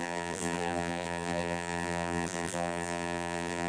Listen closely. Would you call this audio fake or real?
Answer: fake